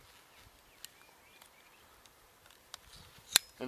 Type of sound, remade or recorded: recorded